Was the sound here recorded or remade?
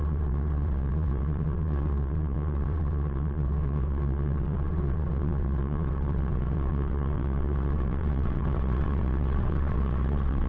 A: remade